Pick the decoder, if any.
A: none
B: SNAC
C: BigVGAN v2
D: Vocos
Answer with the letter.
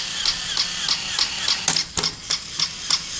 A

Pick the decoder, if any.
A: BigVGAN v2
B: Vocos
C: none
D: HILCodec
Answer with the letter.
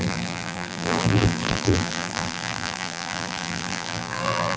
A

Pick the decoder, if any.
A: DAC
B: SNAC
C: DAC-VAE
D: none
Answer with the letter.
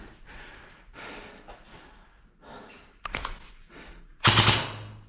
D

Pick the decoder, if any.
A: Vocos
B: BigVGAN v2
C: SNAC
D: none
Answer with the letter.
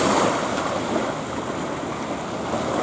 D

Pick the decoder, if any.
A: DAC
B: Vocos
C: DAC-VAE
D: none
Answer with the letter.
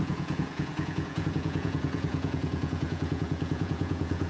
B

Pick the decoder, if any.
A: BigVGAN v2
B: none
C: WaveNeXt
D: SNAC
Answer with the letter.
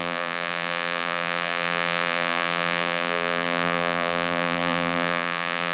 A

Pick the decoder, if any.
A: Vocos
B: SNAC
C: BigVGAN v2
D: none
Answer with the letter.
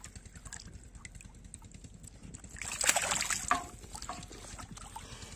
D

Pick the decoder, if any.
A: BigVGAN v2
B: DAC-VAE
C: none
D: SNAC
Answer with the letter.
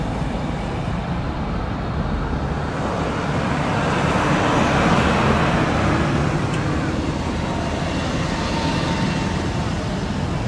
C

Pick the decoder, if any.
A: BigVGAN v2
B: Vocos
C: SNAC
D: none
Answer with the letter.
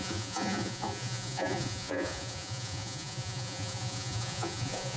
B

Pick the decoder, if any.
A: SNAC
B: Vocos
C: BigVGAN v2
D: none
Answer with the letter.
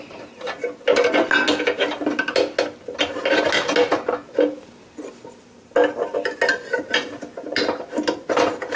D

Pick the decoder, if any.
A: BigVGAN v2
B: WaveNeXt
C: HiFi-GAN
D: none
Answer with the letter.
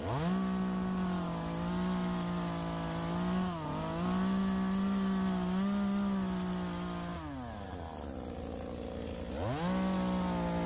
D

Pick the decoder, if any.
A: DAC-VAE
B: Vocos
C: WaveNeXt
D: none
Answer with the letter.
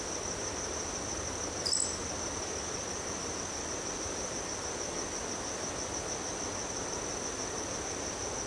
D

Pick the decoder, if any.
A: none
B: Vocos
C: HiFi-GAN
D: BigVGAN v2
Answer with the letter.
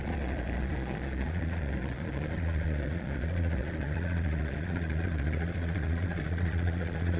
B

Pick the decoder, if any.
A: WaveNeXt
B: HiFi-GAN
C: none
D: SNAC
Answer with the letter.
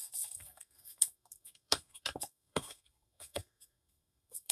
D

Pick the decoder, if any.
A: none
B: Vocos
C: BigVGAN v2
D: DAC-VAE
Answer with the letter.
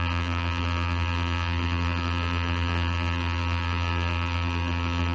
C